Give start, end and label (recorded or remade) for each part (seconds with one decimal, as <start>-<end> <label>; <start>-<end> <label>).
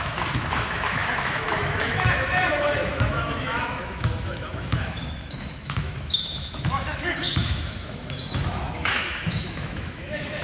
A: 0.0-10.4 remade